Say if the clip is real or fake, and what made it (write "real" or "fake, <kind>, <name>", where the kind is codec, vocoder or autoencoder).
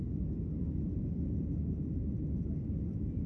real